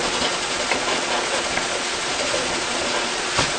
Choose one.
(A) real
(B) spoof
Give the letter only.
B